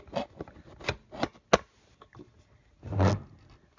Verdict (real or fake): real